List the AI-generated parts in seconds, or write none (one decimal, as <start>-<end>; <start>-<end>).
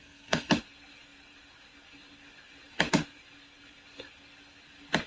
0.0-0.5